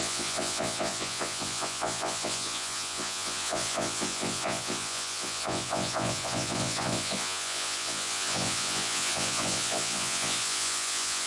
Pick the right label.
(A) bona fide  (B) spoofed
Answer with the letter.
B